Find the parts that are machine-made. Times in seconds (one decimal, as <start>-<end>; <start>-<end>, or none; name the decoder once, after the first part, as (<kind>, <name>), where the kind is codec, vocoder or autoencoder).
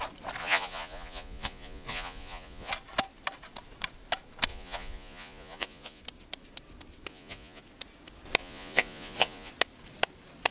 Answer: 0.4-2.7 (vocoder, Vocos); 4.5-6.0; 7.1-7.6; 8.4-9.5